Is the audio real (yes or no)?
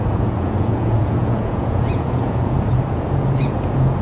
no